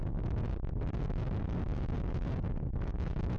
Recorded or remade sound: recorded